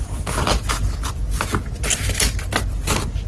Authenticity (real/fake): real